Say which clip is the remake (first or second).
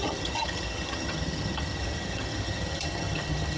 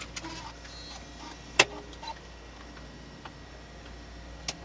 first